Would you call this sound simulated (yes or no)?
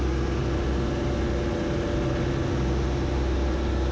no